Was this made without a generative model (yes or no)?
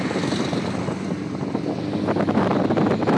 yes